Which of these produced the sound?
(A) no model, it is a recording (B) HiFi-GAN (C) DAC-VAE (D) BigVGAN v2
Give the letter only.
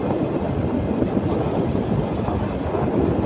A